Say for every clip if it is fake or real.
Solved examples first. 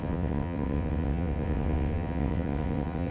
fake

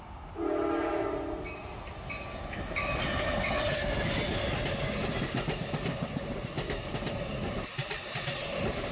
real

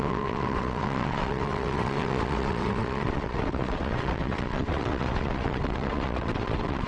fake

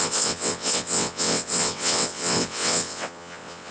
fake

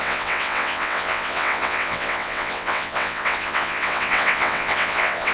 fake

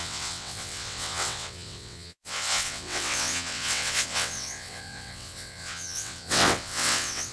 fake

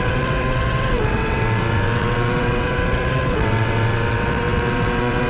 fake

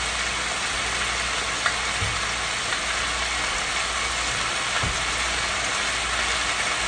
real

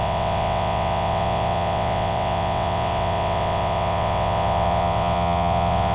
fake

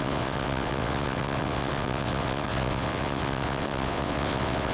fake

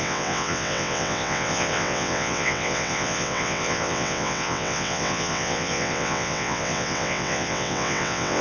fake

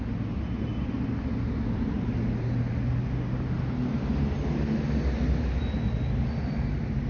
real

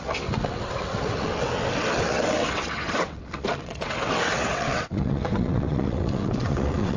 fake